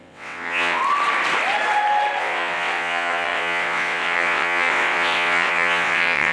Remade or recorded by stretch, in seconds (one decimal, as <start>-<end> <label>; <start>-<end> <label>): 0.0-0.8 remade; 0.8-2.2 recorded; 2.2-6.3 remade